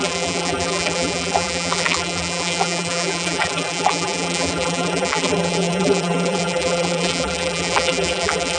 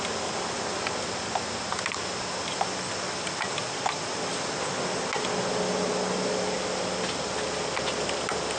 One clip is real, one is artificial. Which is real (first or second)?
second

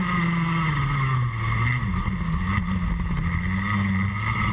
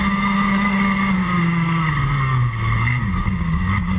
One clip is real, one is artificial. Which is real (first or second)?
first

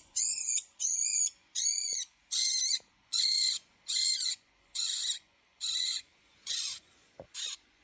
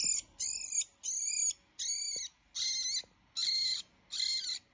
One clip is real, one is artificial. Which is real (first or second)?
second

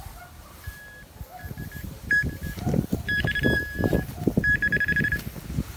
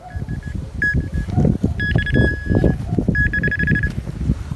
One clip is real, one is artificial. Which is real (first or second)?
second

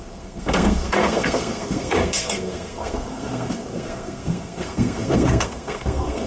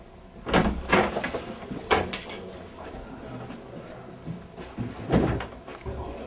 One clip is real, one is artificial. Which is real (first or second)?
second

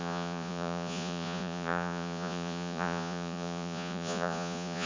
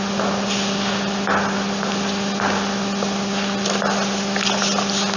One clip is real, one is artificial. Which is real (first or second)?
second